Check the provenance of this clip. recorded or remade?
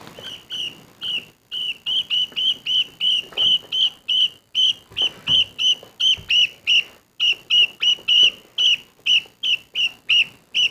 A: recorded